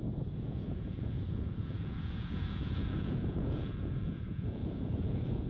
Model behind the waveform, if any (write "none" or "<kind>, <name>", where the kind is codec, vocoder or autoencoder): vocoder, Vocos